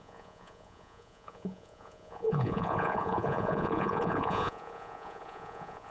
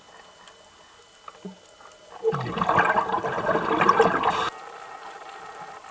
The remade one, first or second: first